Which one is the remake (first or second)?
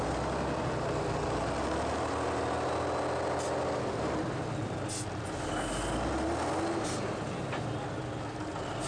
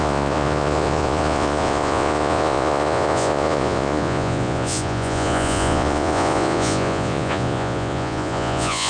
second